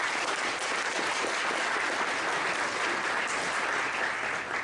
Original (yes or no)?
yes